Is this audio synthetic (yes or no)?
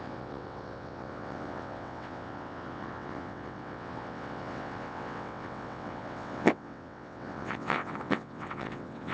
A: yes